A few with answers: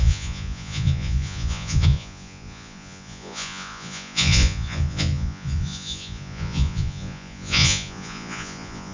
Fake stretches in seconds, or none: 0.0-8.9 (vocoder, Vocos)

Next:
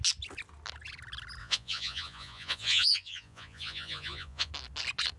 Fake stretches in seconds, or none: 1.4-4.5 (vocoder, Vocos)

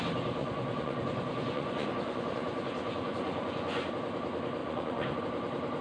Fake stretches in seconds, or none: 0.4-3.9 (vocoder, Vocos); 4.6-5.2

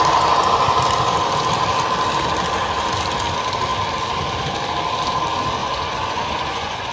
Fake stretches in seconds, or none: 5.6-6.9 (vocoder, Vocos)

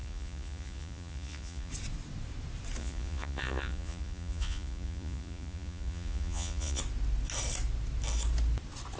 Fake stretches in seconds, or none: 0.0-1.7 (vocoder, Vocos); 2.8-6.8

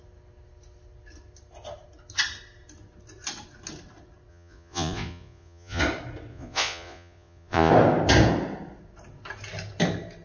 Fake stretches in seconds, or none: 4.3-5.8 (vocoder, Vocos); 6.3-7.7

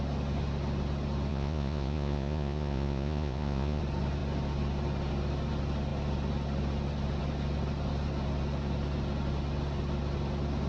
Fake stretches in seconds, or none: 1.3-3.8 (vocoder, Vocos)

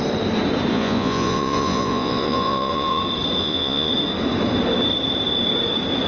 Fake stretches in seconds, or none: 0.7-3.0 (vocoder, Vocos); 3.4-3.9